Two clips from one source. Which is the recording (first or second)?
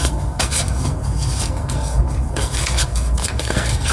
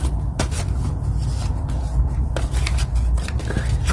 second